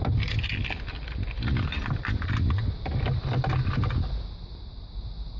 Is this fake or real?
real